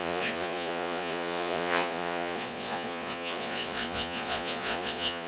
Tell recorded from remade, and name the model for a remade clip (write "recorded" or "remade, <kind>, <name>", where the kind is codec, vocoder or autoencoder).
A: remade, vocoder, Vocos